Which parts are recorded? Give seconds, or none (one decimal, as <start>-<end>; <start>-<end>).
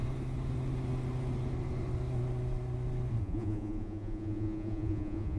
0.0-3.2